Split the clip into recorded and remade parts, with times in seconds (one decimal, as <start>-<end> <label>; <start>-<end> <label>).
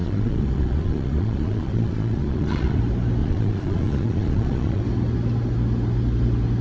0.0-2.8 remade; 2.8-3.2 recorded; 3.2-4.8 remade; 4.8-6.6 recorded